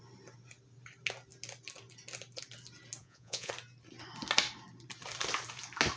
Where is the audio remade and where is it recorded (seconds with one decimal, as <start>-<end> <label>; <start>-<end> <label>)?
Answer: 0.0-3.0 recorded; 3.0-3.5 remade; 3.5-6.0 recorded